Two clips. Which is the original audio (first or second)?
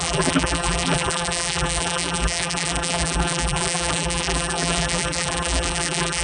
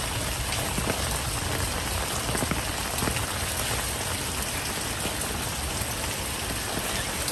second